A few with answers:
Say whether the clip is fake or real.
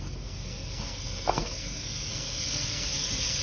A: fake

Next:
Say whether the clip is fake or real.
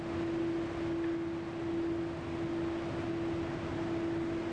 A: real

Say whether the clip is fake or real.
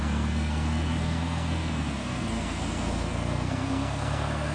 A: fake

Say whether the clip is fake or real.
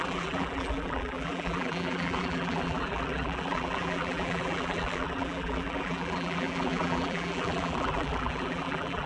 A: fake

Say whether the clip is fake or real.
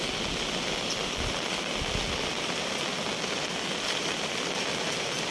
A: real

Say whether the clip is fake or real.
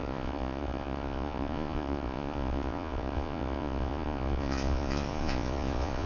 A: fake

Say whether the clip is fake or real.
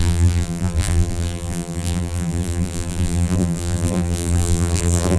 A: fake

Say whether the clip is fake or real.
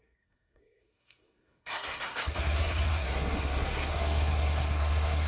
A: fake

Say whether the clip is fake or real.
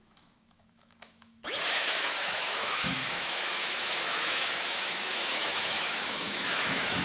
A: fake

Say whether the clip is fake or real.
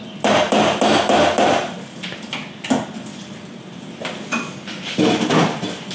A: real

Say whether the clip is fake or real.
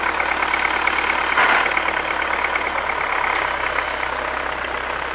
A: real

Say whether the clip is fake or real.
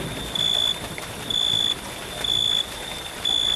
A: real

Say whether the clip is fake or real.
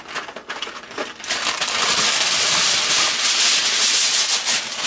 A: real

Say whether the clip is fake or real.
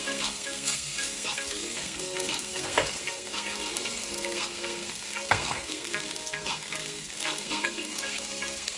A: fake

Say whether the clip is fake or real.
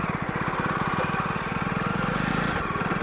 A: real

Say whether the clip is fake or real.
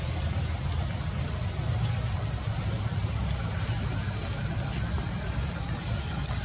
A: fake